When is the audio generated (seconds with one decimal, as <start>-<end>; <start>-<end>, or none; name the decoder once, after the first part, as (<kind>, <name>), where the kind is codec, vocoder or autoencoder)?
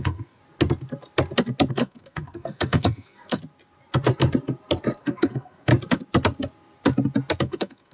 0.0-0.4 (codec, SNAC); 1.7-3.4; 5.0-5.7; 7.4-7.9